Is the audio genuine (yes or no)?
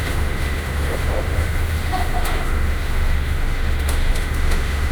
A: no